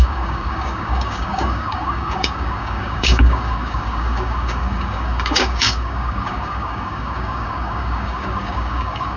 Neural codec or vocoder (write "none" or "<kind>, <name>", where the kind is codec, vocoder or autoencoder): codec, DAC